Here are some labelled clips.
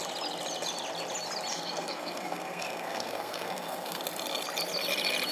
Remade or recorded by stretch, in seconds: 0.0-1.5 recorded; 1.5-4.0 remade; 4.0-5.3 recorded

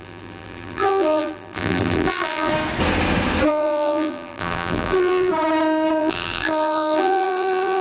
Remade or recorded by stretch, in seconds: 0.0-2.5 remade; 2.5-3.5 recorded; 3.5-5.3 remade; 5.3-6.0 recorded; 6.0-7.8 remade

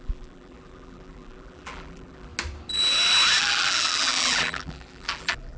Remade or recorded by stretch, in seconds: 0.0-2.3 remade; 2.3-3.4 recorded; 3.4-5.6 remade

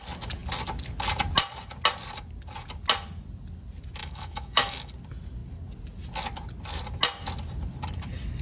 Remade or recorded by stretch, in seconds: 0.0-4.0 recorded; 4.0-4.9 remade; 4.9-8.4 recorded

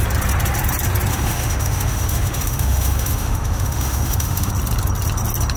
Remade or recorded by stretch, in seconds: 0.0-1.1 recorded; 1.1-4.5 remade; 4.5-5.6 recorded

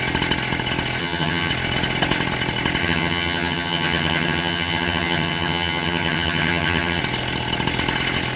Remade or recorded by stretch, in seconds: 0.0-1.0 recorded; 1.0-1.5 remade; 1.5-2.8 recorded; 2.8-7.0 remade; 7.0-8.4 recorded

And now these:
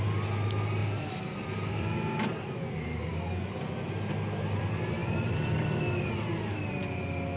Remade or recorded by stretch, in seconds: 0.0-7.4 recorded

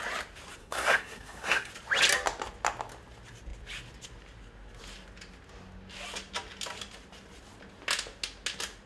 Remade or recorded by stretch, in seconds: 0.0-0.6 recorded; 0.6-1.7 remade; 1.7-8.9 recorded